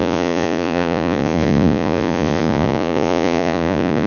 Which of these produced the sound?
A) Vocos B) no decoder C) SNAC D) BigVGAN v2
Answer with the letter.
A